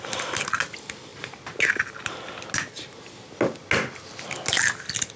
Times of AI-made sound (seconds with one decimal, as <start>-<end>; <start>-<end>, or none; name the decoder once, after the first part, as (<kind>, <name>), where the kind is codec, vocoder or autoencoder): none